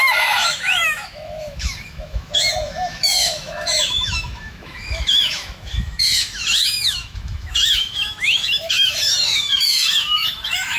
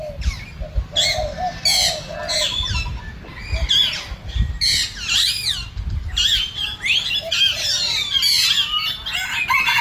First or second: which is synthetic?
first